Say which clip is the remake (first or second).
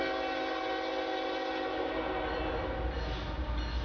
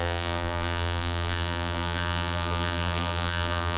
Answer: second